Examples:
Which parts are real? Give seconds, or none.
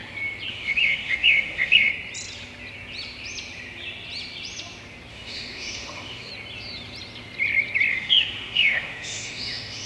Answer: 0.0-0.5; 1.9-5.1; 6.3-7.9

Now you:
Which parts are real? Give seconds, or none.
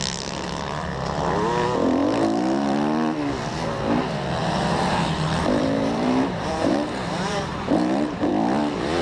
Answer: 0.0-4.4; 8.3-9.0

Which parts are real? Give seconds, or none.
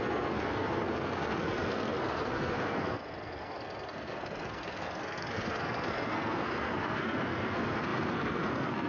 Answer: none